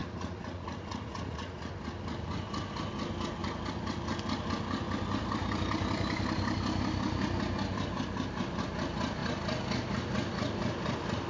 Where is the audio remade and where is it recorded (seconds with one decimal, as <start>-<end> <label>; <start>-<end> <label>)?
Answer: 0.0-1.7 remade; 1.7-11.3 recorded